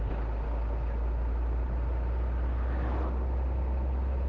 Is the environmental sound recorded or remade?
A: recorded